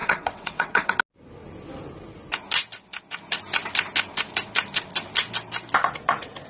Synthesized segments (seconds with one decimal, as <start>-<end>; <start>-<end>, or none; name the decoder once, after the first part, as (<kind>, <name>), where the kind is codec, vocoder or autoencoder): 0.0-0.9 (vocoder, WaveNeXt)